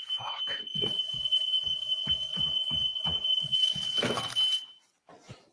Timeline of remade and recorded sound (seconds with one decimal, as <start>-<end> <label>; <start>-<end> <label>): 0.0-0.7 recorded; 0.7-4.0 remade; 4.0-5.5 recorded